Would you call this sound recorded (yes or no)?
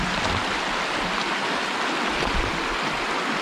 yes